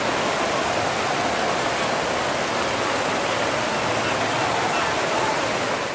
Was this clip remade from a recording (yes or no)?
no